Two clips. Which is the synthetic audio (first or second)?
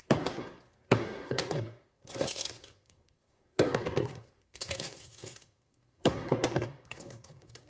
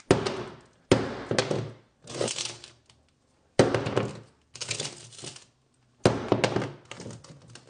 first